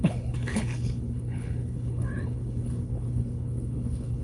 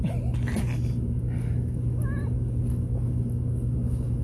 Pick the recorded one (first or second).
second